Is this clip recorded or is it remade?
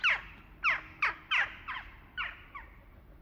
recorded